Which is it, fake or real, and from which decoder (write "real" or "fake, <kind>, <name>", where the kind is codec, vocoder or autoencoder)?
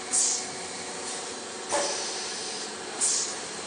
real